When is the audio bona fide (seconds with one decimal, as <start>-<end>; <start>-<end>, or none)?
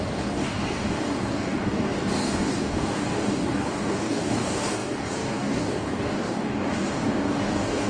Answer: none